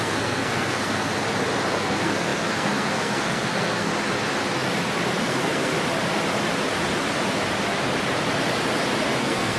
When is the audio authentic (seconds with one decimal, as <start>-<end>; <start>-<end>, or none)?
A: 1.1-1.7; 3.9-5.2; 5.7-9.2